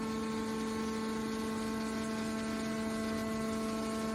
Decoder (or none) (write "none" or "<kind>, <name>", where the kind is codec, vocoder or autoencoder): none